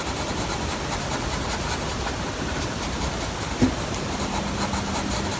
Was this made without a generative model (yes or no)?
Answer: yes